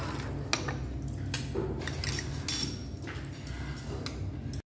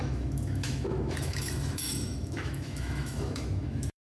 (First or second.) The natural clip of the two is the first